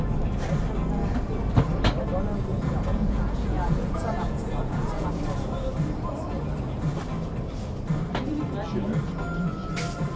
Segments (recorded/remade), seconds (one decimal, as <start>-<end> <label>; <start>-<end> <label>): 0.0-2.5 recorded; 2.5-5.1 remade; 5.1-10.2 recorded